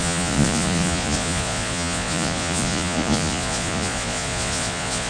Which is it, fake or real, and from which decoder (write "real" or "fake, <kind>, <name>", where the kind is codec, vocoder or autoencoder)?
fake, vocoder, Vocos